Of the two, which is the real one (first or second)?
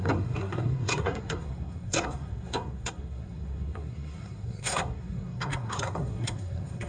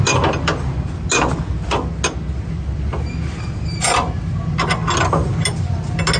second